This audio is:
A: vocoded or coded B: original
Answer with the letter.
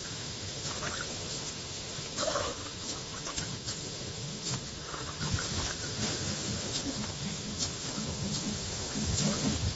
A